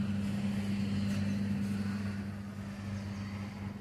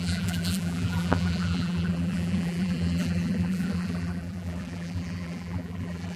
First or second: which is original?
first